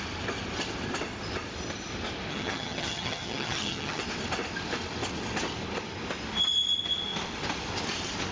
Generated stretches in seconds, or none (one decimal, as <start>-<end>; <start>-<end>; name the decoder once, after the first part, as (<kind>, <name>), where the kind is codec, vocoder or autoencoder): 2.3-4.0 (vocoder, HiFi-GAN)